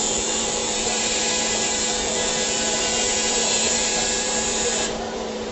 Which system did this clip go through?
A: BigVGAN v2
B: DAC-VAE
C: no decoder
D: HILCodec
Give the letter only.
A